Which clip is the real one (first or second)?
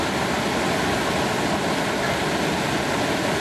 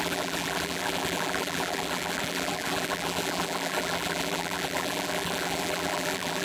first